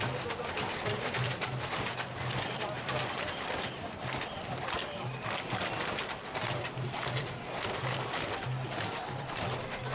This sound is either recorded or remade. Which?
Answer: remade